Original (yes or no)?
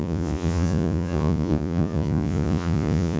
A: no